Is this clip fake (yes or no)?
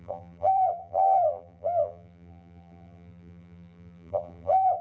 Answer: yes